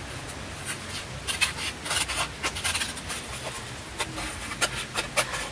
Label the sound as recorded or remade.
recorded